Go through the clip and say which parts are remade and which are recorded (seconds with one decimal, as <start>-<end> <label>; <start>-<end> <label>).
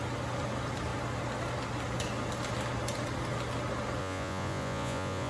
0.0-4.0 recorded; 4.0-5.3 remade